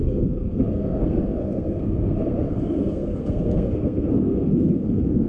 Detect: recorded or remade remade